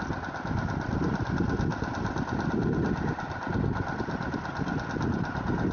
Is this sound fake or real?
real